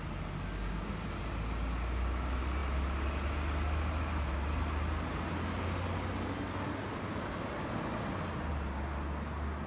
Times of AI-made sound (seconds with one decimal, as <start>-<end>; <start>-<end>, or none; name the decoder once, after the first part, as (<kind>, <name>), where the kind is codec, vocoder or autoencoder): none